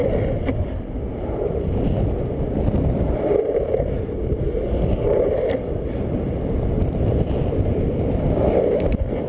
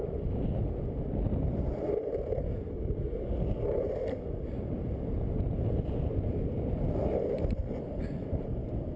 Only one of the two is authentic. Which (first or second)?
second